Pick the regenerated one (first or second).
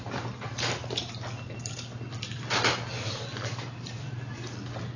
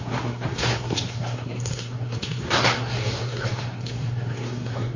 second